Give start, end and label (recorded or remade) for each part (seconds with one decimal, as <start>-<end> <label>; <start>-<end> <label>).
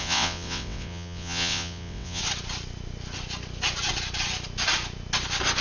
0.0-2.2 remade; 2.2-5.6 recorded